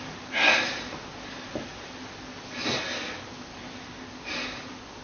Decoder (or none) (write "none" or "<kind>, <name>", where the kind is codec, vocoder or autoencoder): none